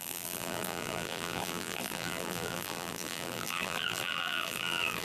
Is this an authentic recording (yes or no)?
no